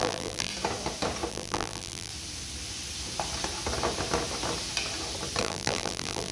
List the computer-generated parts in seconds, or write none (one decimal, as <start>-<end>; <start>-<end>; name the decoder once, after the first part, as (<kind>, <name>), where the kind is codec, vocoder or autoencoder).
0.0-0.5 (vocoder, BigVGAN v2); 1.3-2.1; 5.4-6.3